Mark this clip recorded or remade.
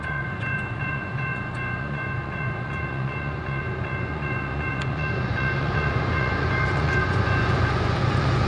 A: remade